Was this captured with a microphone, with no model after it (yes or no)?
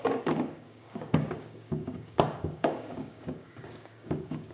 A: no